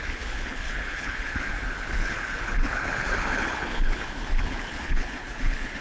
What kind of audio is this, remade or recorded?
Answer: remade